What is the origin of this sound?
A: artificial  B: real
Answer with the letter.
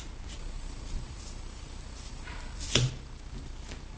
B